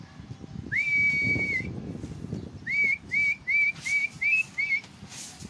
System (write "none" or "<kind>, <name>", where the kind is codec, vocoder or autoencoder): none